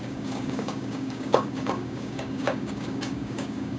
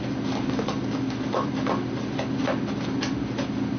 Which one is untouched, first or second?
second